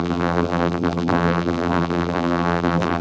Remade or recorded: remade